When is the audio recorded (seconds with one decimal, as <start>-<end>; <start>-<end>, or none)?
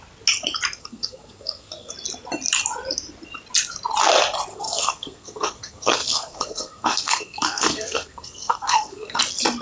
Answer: 0.0-0.8; 1.9-4.5; 9.2-9.6